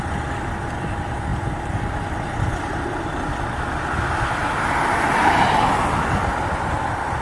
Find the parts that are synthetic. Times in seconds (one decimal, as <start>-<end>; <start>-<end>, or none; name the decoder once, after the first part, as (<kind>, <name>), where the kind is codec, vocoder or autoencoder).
none